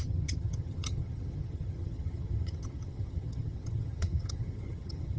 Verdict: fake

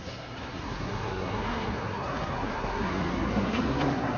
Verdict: fake